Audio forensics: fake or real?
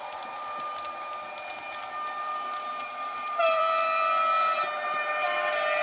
fake